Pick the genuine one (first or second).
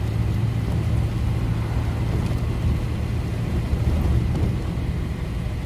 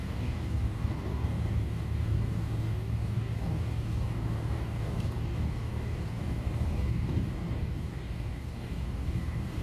first